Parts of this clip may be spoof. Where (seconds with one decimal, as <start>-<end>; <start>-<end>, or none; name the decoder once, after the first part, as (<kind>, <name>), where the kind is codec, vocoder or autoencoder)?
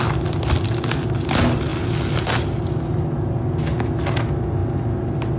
none